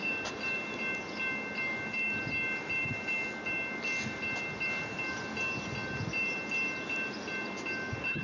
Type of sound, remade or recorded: recorded